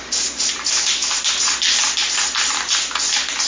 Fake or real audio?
real